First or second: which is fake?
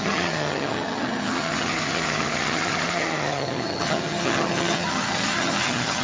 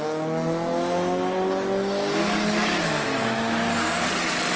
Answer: first